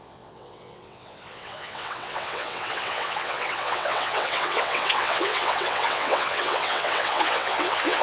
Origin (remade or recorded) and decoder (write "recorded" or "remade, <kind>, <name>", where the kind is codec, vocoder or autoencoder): remade, vocoder, WaveNeXt